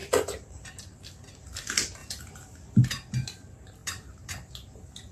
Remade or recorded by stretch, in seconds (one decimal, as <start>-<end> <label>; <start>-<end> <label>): 0.0-0.7 remade; 0.7-2.0 recorded; 2.0-2.8 remade; 2.8-3.8 recorded; 3.8-4.5 remade; 4.5-5.1 recorded